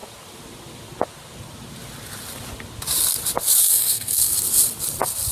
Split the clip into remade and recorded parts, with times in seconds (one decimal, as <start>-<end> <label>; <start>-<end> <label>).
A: 0.0-3.6 recorded; 3.6-4.4 remade; 4.4-5.3 recorded